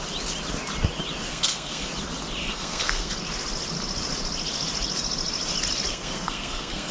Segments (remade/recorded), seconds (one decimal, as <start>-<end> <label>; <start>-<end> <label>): 0.0-1.3 recorded; 1.3-1.9 remade; 1.9-2.4 recorded; 2.4-3.1 remade; 3.1-5.9 recorded; 5.9-6.9 remade